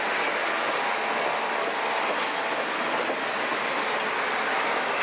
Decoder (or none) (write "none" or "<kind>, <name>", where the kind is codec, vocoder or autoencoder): none